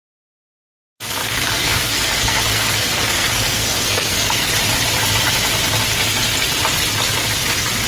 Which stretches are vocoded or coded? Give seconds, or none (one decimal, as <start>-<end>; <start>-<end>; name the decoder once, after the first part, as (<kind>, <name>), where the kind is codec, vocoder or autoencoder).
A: 1.2-4.5 (codec, SNAC)